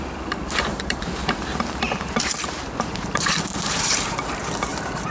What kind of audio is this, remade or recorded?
remade